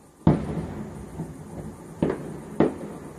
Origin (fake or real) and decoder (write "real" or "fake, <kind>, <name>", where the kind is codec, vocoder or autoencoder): real